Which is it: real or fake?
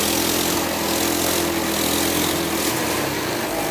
real